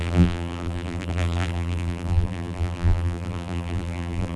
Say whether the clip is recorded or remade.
remade